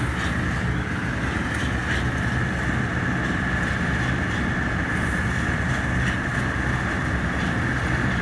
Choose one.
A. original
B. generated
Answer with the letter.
A